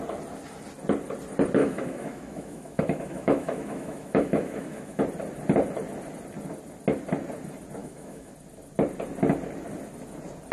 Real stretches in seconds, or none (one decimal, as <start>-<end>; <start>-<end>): 0.0-1.6; 5.0-7.8; 8.3-10.5